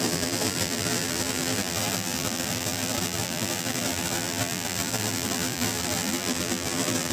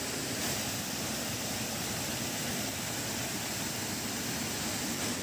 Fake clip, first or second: first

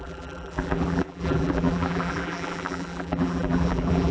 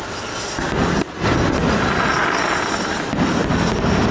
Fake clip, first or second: first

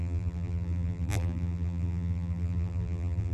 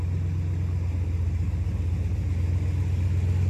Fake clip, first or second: first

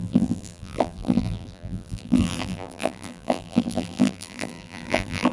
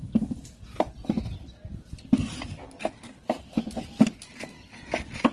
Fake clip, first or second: first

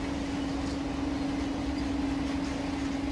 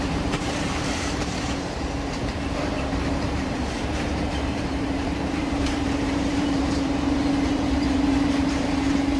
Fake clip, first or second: second